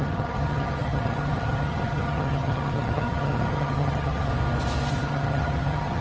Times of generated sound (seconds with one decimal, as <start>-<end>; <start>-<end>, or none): 0.0-4.3; 4.9-6.0